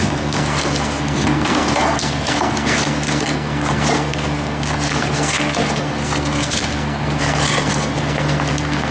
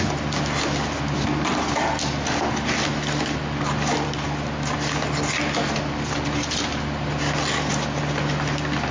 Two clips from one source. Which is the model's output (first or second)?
first